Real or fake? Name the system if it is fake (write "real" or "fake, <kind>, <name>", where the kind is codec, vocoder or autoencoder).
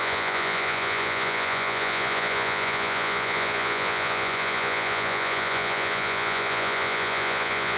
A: fake, vocoder, Vocos